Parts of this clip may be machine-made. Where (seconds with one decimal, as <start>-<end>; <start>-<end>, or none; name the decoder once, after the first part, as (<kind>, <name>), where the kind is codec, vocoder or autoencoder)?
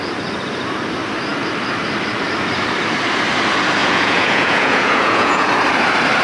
3.8-5.5 (vocoder, Vocos)